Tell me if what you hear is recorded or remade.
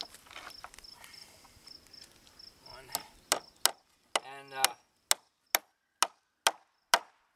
recorded